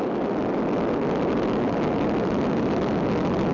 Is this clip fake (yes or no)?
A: no